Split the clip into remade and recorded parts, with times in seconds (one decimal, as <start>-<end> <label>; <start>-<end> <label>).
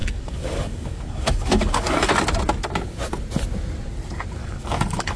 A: 0.0-2.1 remade; 2.1-4.4 recorded; 4.4-5.2 remade